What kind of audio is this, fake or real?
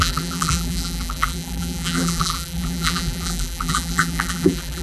fake